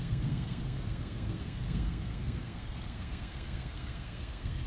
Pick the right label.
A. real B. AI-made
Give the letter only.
B